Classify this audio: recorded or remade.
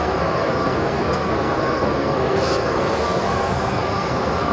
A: remade